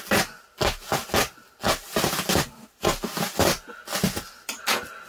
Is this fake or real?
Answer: real